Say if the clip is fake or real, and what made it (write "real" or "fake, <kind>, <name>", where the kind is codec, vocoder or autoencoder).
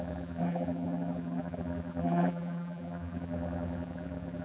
fake, vocoder, BigVGAN v2